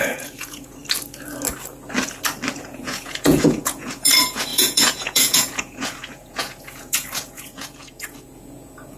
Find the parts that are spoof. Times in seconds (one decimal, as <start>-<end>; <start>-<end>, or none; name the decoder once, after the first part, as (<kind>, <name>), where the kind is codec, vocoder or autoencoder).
0.0-0.8 (vocoder, Vocos); 2.6-9.0